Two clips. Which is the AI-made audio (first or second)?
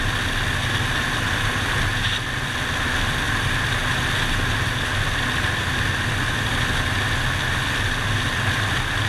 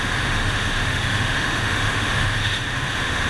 second